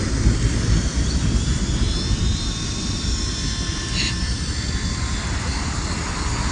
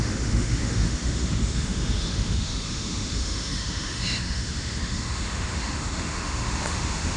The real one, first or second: first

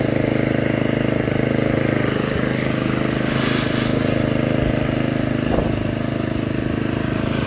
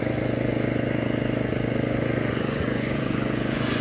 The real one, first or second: first